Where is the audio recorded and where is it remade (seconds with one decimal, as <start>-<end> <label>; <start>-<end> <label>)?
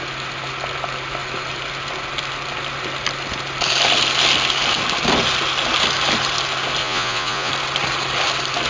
0.0-6.8 recorded; 6.8-7.5 remade; 7.5-8.7 recorded